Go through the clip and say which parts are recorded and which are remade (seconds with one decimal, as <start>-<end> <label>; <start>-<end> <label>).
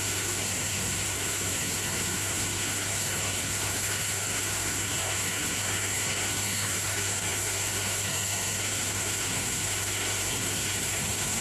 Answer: 0.0-11.4 remade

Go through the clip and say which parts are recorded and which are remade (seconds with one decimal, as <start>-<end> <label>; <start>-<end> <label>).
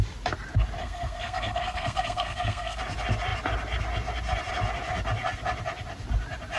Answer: 0.0-0.8 recorded; 0.8-2.8 remade; 2.8-6.6 recorded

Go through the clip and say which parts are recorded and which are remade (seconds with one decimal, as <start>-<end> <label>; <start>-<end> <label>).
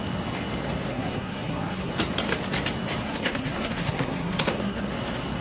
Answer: 0.0-0.9 recorded; 0.9-1.9 remade; 1.9-3.0 recorded; 3.0-4.9 remade; 4.9-5.4 recorded